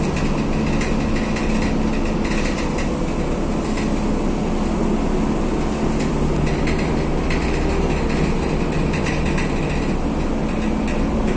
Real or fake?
real